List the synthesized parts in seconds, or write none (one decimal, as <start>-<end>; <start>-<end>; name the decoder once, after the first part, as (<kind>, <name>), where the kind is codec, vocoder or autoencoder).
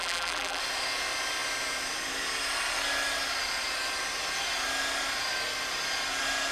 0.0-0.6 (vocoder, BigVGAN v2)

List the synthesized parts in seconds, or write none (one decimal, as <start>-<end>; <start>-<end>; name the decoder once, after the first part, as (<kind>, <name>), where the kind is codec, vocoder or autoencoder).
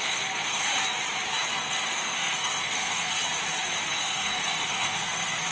0.0-0.7 (codec, SNAC); 1.5-3.2; 3.9-5.5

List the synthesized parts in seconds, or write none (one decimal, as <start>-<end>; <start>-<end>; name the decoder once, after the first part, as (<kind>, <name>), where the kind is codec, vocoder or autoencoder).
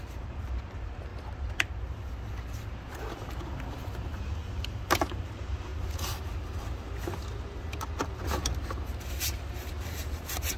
0.0-1.1 (vocoder, BigVGAN v2); 4.7-5.7; 9.1-10.6